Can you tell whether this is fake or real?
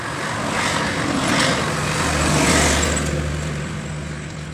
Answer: real